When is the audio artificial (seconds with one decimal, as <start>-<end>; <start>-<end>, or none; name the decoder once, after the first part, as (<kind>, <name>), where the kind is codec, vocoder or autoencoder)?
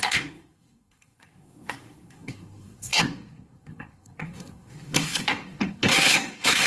0.0-6.7 (codec, SNAC)